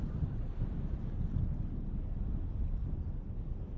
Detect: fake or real real